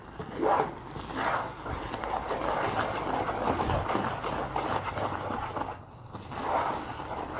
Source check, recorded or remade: recorded